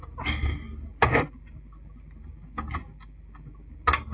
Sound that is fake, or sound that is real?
real